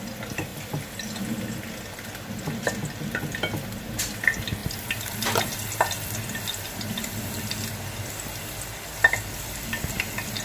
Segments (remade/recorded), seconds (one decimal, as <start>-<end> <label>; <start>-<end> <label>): 0.0-10.4 recorded